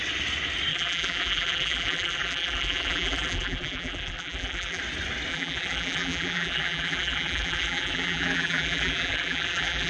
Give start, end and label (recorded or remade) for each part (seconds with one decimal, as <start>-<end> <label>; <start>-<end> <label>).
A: 0.0-0.7 recorded; 0.7-4.8 remade; 4.8-5.3 recorded; 5.3-9.9 remade